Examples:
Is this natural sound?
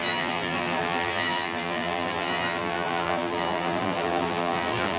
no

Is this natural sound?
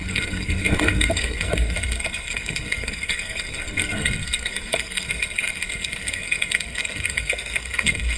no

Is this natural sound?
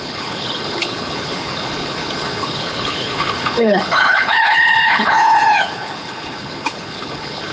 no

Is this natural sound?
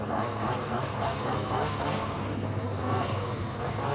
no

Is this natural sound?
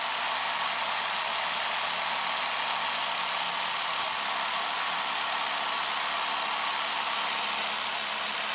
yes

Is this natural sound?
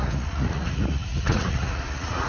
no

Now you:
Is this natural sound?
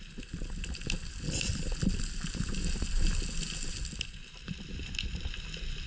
yes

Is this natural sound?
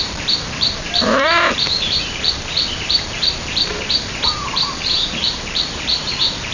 no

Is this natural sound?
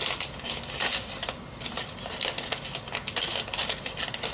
yes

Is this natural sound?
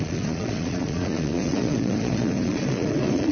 no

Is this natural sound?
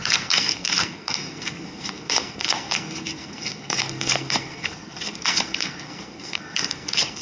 no